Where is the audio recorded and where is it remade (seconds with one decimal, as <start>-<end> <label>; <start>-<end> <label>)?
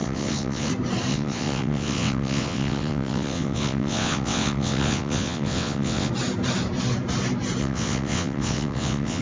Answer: 0.0-0.7 remade; 0.7-1.1 recorded; 1.1-6.1 remade; 6.1-7.6 recorded; 7.6-9.2 remade